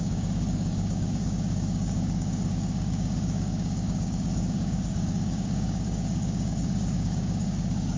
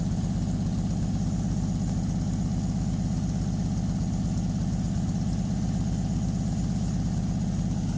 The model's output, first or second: first